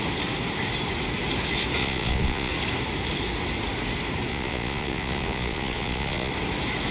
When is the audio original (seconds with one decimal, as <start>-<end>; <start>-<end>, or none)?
0.0-1.8; 2.5-4.3; 6.3-6.9

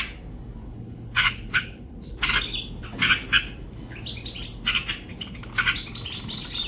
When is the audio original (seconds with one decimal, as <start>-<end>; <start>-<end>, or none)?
0.0-0.6; 2.3-5.1; 5.6-6.7

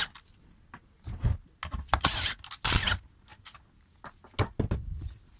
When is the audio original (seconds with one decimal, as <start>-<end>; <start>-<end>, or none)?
0.0-5.4

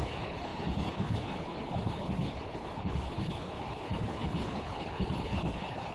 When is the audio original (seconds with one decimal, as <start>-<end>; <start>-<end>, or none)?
none

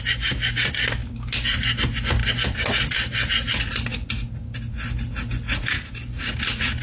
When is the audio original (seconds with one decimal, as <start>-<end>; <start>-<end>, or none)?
0.0-6.8

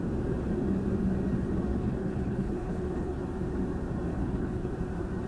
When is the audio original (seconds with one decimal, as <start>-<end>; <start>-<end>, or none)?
0.0-1.7; 3.2-4.1; 4.7-5.3